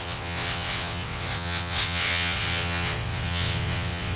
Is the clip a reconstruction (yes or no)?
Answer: yes